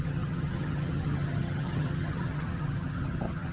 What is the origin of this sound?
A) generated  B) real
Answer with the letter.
A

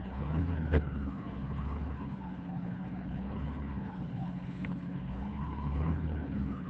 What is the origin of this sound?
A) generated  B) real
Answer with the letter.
A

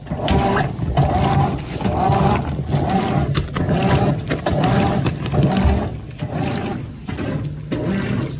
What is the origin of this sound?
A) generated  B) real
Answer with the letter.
B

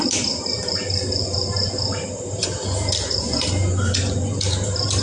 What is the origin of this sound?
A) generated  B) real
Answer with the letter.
A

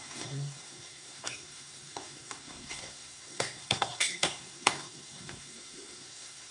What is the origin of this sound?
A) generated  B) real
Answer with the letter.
A